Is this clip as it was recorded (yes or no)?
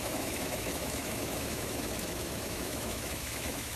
no